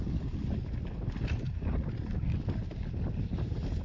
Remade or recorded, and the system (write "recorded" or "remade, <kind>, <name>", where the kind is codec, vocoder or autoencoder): recorded